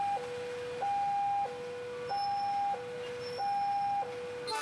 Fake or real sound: real